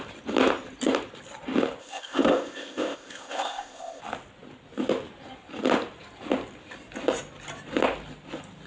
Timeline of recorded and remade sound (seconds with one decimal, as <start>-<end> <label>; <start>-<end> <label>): 0.0-1.8 recorded; 1.8-4.0 remade; 4.0-8.7 recorded